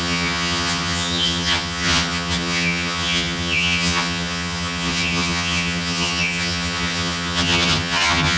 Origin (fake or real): fake